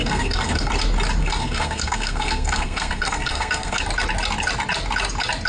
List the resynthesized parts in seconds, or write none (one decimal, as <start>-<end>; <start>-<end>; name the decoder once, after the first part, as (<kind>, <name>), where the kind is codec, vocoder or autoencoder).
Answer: 0.0-0.7 (codec, SNAC); 1.2-3.8